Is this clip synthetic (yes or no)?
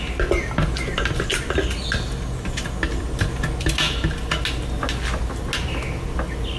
no